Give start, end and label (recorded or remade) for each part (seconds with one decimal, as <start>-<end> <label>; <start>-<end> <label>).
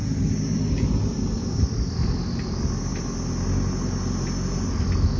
0.0-5.2 recorded